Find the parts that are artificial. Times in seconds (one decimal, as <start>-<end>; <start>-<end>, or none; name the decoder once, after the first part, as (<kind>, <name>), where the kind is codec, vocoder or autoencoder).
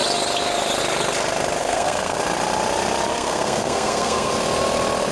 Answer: 1.6-2.2 (codec, SNAC); 3.1-4.3